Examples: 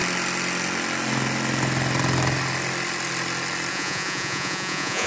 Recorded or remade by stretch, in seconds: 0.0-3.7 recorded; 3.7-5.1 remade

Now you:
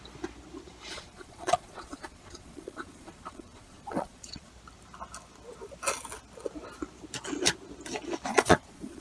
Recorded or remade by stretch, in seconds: 0.0-0.9 recorded; 0.9-4.5 remade; 4.5-8.3 recorded; 8.3-9.0 remade

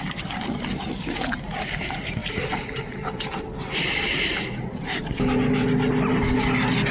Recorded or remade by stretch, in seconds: 0.0-6.9 recorded

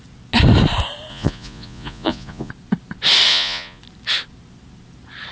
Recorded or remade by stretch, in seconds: 0.0-1.1 recorded; 1.1-2.5 remade; 2.5-3.3 recorded; 3.3-3.8 remade; 3.8-5.3 recorded

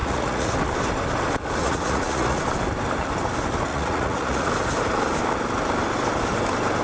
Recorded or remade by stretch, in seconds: 0.0-0.5 remade; 0.5-1.6 recorded; 1.6-2.4 remade; 2.4-3.7 recorded; 3.7-4.5 remade; 4.5-6.8 recorded

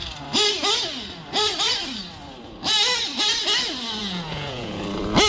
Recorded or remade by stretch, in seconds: 0.0-4.0 recorded; 4.0-4.8 remade; 4.8-5.3 recorded